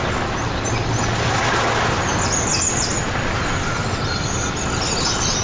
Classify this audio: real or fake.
real